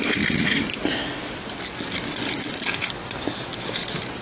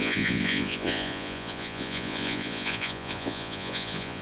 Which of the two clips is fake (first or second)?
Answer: second